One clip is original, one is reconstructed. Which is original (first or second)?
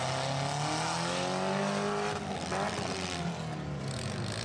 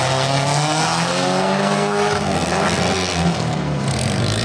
first